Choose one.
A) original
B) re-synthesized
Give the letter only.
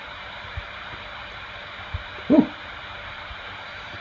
B